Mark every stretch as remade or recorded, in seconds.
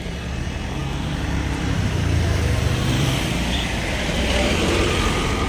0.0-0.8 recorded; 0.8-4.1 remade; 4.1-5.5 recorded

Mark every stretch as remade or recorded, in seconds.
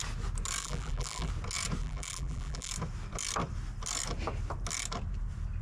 0.0-0.6 recorded; 0.6-1.3 remade; 1.3-1.8 recorded; 1.8-2.7 remade; 2.7-5.6 recorded